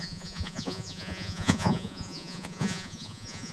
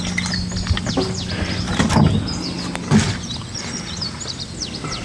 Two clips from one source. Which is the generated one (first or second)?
first